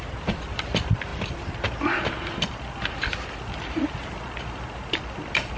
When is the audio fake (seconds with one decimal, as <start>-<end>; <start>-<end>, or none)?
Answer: none

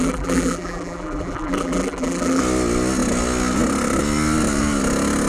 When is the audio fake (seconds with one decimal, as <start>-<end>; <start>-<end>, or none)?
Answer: 0.0-2.4

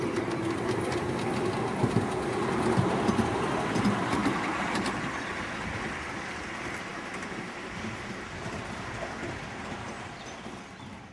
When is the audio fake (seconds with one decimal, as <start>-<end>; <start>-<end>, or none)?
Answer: 4.2-5.0; 6.9-7.7; 9.6-10.2

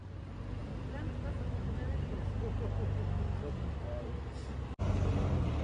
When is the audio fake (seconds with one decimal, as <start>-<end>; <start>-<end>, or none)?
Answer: none

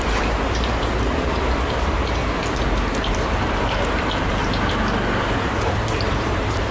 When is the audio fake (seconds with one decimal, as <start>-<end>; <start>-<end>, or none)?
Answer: 0.0-2.2; 2.9-4.4; 6.2-6.7